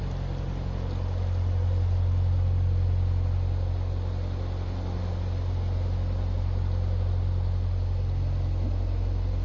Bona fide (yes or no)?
yes